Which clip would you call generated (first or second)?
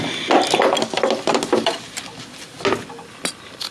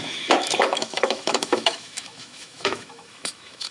second